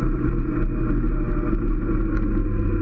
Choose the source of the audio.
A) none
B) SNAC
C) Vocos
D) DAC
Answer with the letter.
A